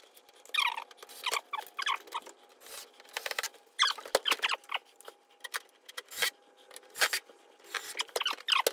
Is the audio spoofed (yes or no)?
no